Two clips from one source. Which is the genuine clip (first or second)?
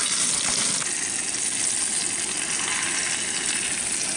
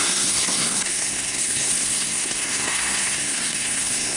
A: first